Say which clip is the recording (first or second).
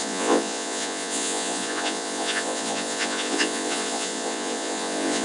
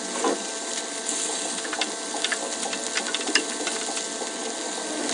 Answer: second